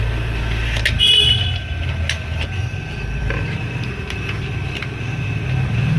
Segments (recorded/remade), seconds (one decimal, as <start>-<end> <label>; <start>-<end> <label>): 0.0-6.0 recorded